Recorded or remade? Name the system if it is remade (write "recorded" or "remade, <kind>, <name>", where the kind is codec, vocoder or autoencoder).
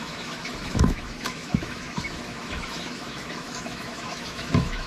remade, autoencoder, DAC-VAE